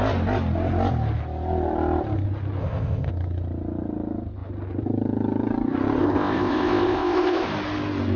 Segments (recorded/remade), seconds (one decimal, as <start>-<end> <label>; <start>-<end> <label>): 0.0-2.6 recorded; 2.6-3.1 remade; 3.1-6.0 recorded; 6.0-7.5 remade; 7.5-8.2 recorded